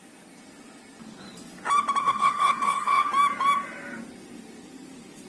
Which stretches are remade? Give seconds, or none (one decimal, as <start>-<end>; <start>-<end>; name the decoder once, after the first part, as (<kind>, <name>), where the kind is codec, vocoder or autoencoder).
2.0-3.1 (codec, SNAC)

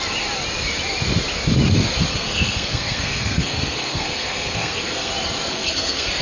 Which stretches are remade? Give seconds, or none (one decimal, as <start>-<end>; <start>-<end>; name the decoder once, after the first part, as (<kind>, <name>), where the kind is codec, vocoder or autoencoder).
2.1-5.1 (codec, SNAC); 5.5-6.2

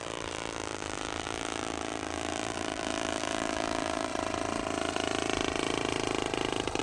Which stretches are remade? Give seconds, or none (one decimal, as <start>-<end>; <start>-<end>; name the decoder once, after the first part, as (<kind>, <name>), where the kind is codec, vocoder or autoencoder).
0.0-4.1 (vocoder, BigVGAN v2)

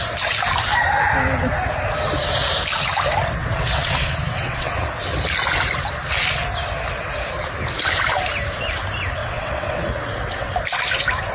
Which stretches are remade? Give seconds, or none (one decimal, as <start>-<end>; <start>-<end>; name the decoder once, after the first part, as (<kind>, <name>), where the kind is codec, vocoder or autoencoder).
3.4-5.0 (vocoder, WaveNeXt); 9.2-10.5